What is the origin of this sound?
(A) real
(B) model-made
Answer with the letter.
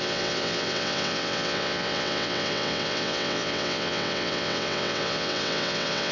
B